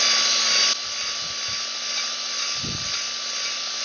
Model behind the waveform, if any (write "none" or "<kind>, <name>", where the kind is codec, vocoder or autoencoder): none